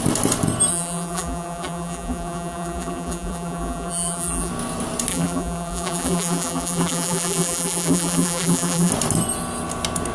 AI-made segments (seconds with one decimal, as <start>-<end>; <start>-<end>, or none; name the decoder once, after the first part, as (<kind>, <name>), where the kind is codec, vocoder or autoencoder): 0.7-4.5 (vocoder, BigVGAN v2); 5.1-8.9